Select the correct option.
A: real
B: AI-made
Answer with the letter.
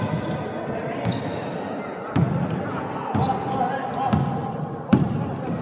A